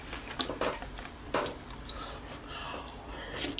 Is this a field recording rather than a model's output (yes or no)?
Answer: yes